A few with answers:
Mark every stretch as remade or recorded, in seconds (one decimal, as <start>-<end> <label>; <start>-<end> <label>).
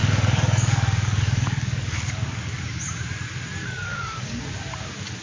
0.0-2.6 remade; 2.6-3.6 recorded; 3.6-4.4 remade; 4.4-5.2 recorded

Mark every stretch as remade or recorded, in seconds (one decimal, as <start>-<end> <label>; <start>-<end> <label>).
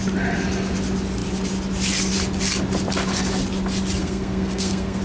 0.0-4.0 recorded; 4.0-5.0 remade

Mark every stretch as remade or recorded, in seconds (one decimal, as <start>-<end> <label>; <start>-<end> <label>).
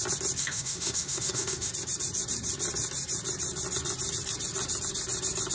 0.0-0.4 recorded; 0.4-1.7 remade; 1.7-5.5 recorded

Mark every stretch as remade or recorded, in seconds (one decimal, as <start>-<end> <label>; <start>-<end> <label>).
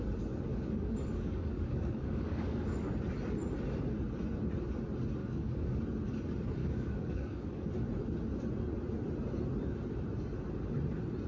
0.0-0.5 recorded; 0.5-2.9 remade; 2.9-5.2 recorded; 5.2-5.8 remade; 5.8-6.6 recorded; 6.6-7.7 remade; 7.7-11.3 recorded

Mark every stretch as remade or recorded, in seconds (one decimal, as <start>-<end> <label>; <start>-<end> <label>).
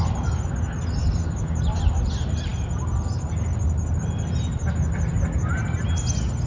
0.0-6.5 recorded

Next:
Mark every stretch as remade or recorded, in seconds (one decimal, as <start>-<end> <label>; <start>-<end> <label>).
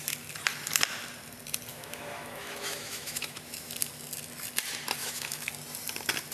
0.0-1.7 recorded; 1.7-3.7 remade; 3.7-5.0 recorded; 5.0-5.5 remade; 5.5-6.3 recorded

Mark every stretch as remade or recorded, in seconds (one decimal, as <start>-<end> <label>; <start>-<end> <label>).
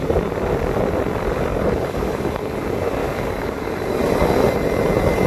0.0-1.5 recorded; 1.5-2.4 remade; 2.4-3.0 recorded; 3.0-3.7 remade; 3.7-5.3 recorded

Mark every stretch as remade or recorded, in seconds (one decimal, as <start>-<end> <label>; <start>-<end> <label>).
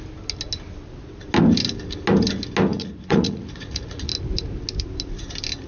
0.0-2.7 recorded; 2.7-4.1 remade; 4.1-5.7 recorded